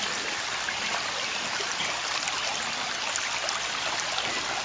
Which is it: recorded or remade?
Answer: recorded